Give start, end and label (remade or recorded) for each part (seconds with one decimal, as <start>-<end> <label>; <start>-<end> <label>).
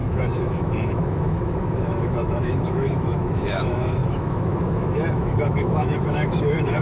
0.0-6.8 remade